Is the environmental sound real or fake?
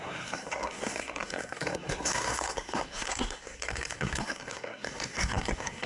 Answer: fake